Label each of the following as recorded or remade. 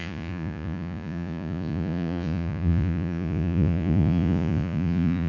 remade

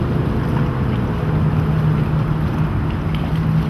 recorded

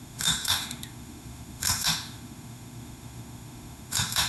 remade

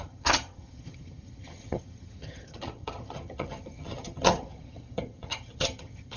remade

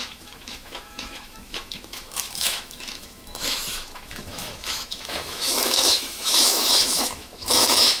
remade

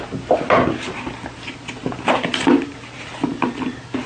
recorded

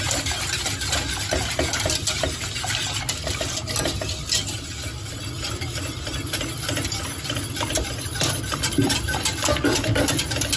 recorded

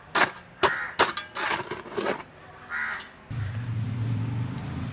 recorded